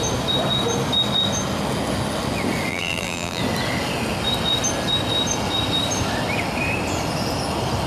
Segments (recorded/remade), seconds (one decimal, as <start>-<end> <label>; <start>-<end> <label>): 0.0-2.7 recorded; 2.7-3.4 remade; 3.4-7.9 recorded